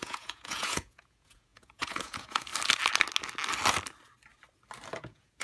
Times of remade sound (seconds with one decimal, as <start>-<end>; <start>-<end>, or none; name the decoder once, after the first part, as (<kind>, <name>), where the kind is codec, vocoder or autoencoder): 0.0-2.5 (vocoder, Vocos); 5.0-5.4